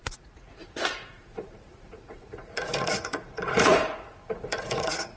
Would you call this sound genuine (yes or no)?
no